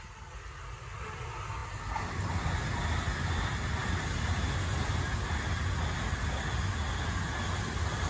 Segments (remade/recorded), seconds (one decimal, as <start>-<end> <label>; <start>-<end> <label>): 0.0-8.1 recorded